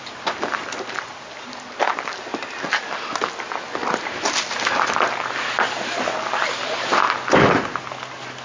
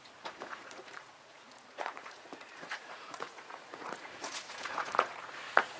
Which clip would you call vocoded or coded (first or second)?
second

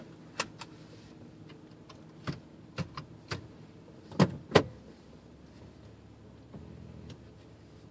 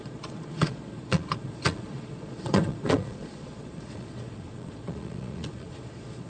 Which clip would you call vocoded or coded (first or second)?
second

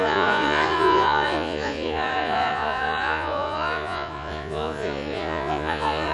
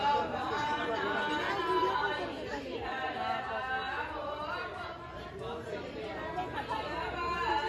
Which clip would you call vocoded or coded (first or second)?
first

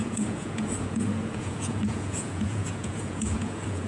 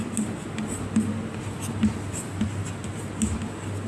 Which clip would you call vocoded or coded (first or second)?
first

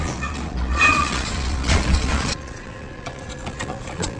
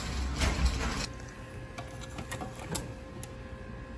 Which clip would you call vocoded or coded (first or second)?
first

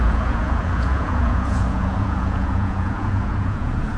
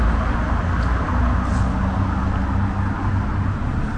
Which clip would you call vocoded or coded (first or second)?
first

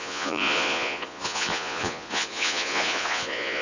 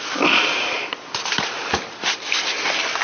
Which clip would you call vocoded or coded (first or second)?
first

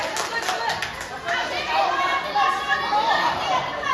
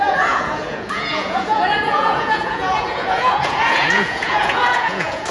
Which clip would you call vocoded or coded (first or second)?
second